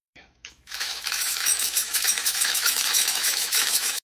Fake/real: fake